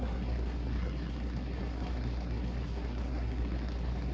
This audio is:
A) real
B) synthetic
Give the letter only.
B